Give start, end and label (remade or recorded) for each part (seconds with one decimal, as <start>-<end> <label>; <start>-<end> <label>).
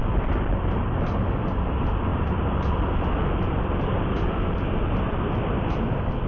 0.0-6.3 recorded